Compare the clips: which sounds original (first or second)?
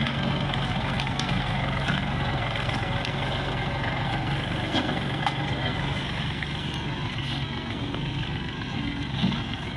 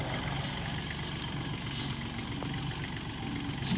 second